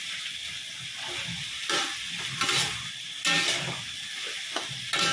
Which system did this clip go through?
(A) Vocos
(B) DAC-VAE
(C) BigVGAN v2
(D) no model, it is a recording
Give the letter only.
D